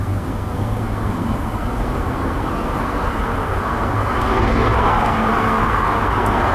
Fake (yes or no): yes